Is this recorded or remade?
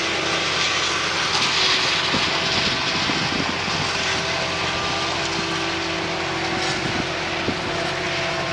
recorded